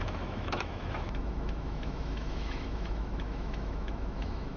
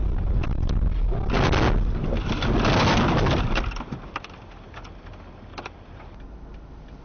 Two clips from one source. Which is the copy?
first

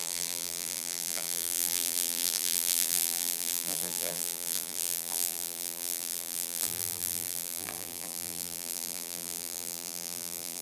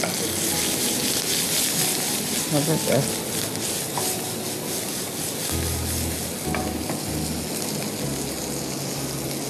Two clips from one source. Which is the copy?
first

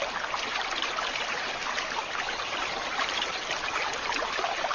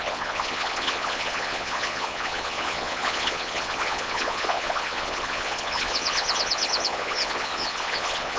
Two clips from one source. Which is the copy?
second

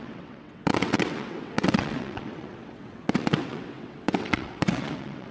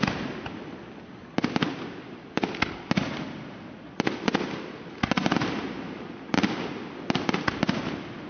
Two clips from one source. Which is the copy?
first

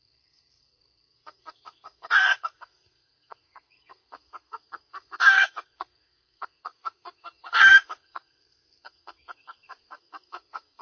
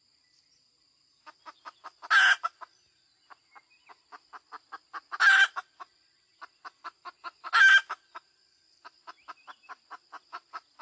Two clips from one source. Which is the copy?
first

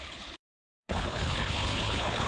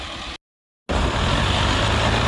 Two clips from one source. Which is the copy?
first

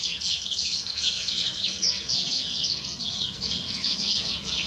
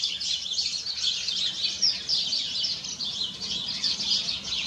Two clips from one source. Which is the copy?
first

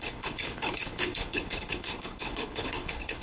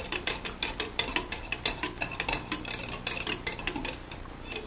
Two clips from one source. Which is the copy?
first